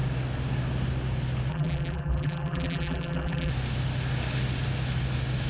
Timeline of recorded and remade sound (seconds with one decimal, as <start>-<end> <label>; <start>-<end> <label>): 0.0-1.5 recorded; 1.5-3.5 remade; 3.5-5.5 recorded

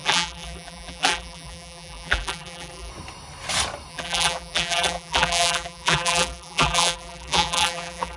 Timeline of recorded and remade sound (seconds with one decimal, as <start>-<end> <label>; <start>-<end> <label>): 0.0-2.9 remade; 2.9-3.9 recorded; 3.9-8.2 remade

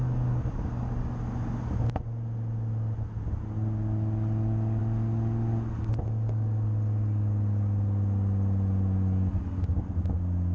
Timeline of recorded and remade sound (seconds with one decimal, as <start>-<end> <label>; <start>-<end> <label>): 0.0-10.5 recorded

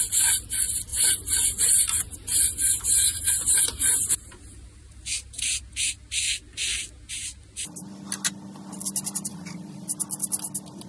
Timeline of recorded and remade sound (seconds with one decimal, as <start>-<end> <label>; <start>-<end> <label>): 0.0-0.9 recorded; 0.9-5.6 remade; 5.6-9.3 recorded; 9.3-9.9 remade; 9.9-10.9 recorded

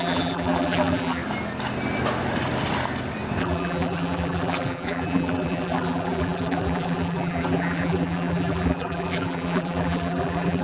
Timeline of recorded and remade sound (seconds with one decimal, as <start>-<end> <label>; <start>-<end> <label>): 0.0-1.2 remade; 1.2-3.4 recorded; 3.4-10.6 remade

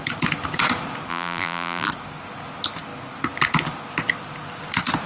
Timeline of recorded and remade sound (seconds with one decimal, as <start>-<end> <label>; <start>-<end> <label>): 0.0-1.1 recorded; 1.1-1.9 remade; 1.9-5.1 recorded

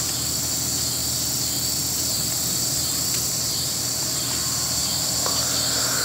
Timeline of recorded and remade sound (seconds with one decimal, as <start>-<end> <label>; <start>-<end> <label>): 0.0-1.0 recorded; 1.0-3.8 remade; 3.8-4.8 recorded; 4.8-5.3 remade; 5.3-6.0 recorded